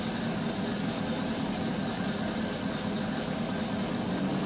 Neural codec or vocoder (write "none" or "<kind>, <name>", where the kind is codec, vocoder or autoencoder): none